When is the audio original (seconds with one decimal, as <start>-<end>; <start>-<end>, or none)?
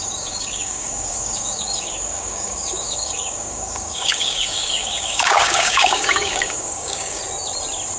7.2-8.0